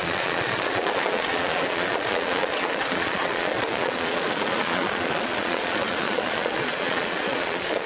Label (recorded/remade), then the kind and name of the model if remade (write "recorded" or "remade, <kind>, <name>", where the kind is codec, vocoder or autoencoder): remade, vocoder, Vocos